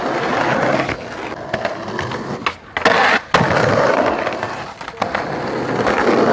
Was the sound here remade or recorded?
recorded